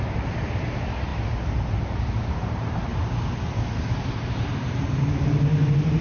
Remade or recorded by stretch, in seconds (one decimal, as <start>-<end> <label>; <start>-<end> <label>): 0.0-1.1 remade; 1.1-1.7 recorded; 1.7-2.9 remade; 2.9-4.1 recorded; 4.1-6.0 remade